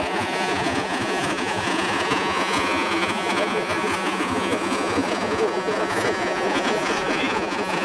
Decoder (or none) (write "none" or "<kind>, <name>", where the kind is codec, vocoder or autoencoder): vocoder, Vocos